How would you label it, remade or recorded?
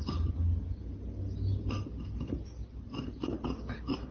recorded